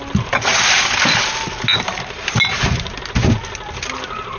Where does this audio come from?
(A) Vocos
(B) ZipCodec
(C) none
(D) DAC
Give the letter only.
C